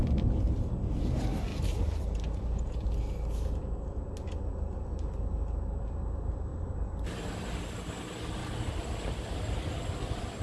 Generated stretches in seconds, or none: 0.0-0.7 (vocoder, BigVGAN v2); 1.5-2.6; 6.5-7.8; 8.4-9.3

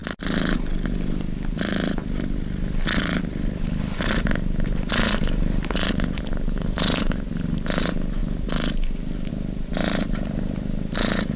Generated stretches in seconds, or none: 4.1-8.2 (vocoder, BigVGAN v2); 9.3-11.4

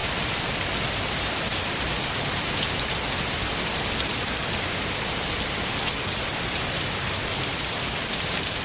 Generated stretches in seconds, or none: 0.5-3.4 (vocoder, BigVGAN v2); 4.4-8.6

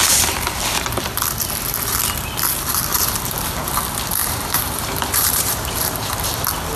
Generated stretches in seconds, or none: 2.9-3.8 (vocoder, BigVGAN v2); 4.2-6.3

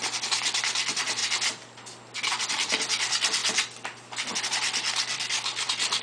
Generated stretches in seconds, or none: 0.0-1.2 (vocoder, BigVGAN v2); 2.3-3.4; 4.4-6.0

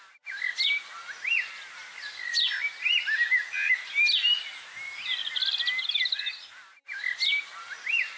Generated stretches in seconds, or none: none

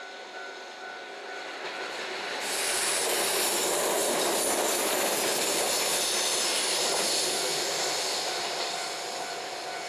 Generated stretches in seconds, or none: 4.0-4.8 (vocoder, BigVGAN v2)

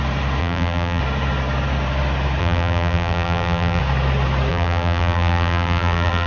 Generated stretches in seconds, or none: 0.4-1.0 (vocoder, BigVGAN v2); 2.4-3.8; 4.5-6.3